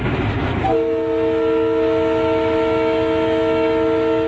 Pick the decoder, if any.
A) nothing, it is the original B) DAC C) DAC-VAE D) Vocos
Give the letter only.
A